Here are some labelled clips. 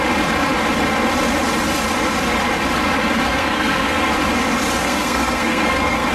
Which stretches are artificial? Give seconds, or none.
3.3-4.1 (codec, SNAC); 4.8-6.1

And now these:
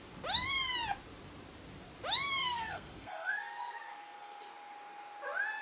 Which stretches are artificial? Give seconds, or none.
2.4-4.4 (codec, SNAC)

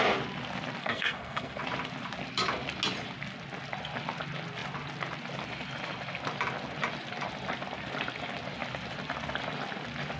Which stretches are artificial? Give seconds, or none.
0.8-1.6 (codec, SNAC)

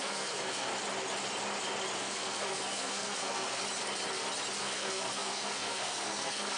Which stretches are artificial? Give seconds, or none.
0.0-0.7 (codec, SNAC); 2.0-3.6; 4.6-6.6

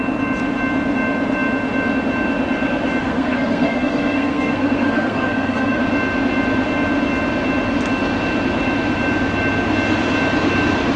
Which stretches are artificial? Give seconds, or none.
3.0-5.8 (codec, SNAC)

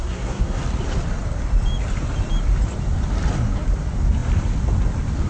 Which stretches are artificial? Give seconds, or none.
0.0-0.6 (codec, SNAC)